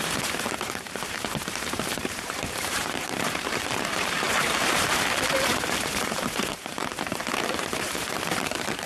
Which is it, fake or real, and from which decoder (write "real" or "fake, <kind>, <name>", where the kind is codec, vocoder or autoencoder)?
fake, vocoder, BigVGAN v2